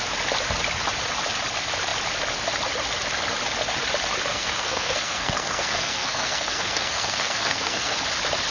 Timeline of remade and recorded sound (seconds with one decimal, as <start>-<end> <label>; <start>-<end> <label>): 0.0-4.3 recorded; 4.3-8.0 remade; 8.0-8.5 recorded